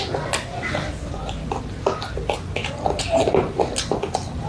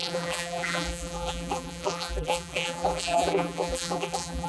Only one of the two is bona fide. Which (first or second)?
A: first